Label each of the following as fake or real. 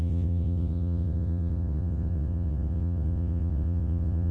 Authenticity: fake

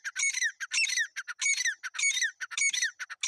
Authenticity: real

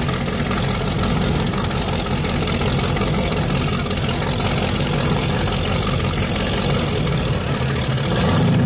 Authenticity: real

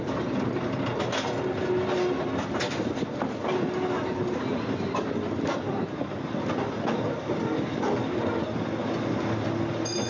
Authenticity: real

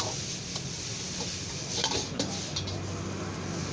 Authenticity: real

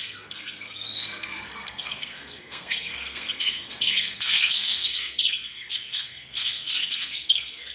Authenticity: fake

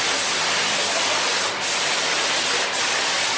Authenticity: real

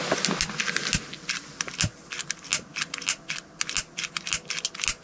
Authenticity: real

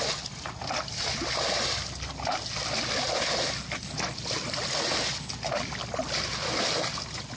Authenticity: real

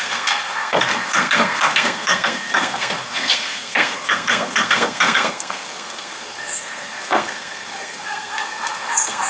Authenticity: fake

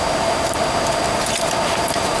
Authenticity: real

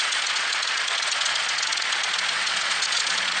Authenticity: fake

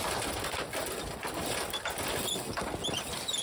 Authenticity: real